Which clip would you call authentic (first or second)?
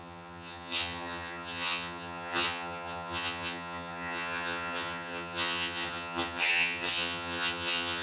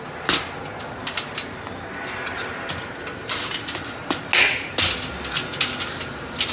second